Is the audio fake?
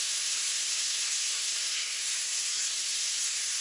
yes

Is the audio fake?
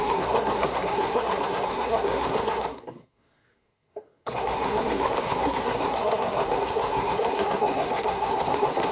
yes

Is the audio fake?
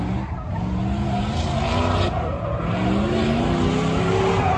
no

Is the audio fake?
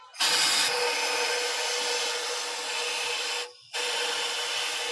no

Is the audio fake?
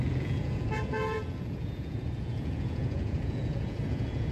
yes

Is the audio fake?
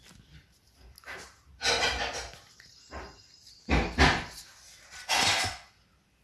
no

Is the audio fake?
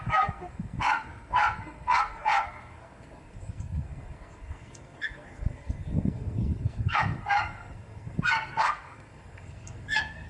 yes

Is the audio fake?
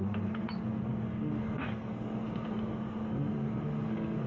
yes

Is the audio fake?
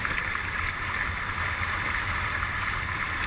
no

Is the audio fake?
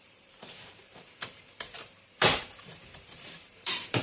yes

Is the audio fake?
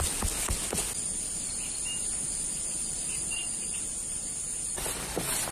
no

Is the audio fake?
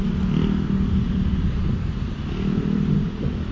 yes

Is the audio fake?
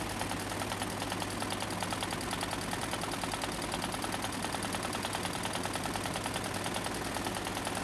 no